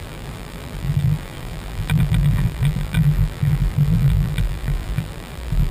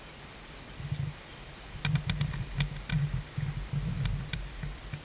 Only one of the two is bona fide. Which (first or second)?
second